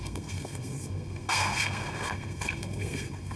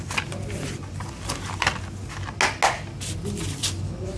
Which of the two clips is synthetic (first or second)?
first